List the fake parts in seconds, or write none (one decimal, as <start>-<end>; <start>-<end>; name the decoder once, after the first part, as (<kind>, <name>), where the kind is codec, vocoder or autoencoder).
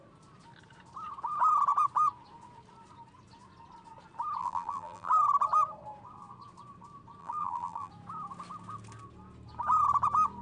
4.4-5.1 (vocoder, BigVGAN v2); 7.2-7.9